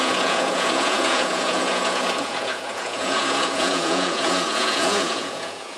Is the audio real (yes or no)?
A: no